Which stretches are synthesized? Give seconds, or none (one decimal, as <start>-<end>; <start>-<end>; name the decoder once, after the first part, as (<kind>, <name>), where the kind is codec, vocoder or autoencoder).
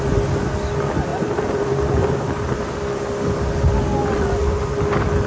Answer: 1.1-2.6 (vocoder, BigVGAN v2); 4.0-5.3